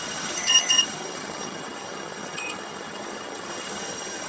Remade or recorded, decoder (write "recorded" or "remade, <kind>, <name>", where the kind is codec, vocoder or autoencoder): remade, vocoder, HiFi-GAN